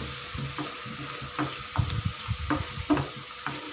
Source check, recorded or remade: recorded